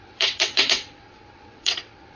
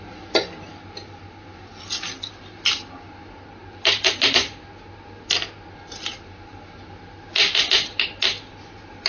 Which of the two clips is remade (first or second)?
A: first